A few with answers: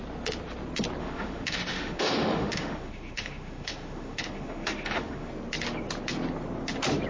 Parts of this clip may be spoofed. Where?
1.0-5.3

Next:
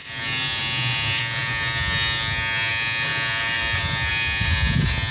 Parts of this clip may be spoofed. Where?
none

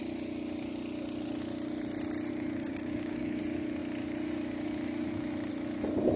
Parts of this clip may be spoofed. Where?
2.3-3.4

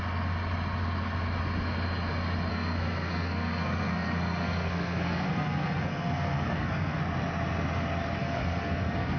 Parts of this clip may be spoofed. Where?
2.5-7.0; 8.2-9.2

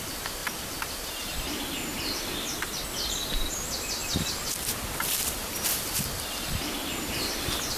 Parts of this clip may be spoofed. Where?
none

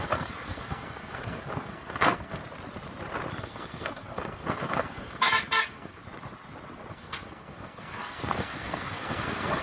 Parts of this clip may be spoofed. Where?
0.0-2.4; 3.4-6.0; 6.9-9.6